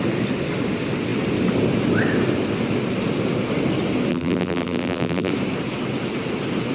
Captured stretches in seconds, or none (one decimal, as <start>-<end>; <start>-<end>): 0.0-4.1; 5.3-6.7